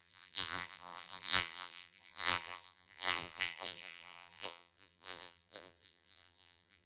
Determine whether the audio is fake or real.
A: fake